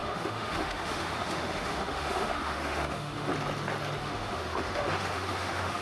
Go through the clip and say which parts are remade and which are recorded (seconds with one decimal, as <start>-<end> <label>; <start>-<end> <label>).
0.0-3.3 remade; 3.3-4.0 recorded; 4.0-5.8 remade